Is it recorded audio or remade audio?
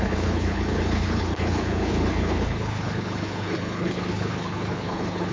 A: remade